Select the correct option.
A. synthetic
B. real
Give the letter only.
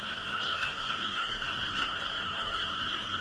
A